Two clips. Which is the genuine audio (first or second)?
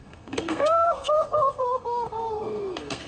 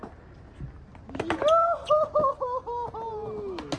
second